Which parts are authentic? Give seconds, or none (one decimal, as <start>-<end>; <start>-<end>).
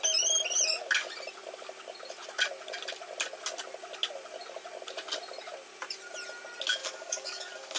0.0-6.8